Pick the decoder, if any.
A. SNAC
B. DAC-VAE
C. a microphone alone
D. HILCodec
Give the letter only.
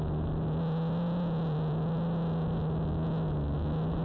C